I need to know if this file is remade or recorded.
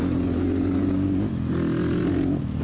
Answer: recorded